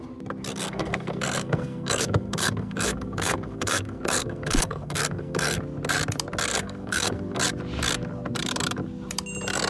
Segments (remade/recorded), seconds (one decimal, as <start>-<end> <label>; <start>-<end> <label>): 0.0-0.5 recorded; 0.5-5.6 remade; 5.6-6.5 recorded; 6.5-7.4 remade; 7.4-9.7 recorded